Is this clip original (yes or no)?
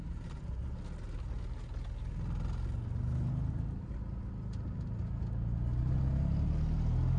yes